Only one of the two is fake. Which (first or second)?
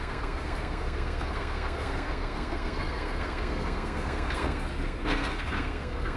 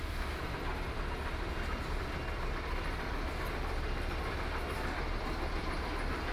first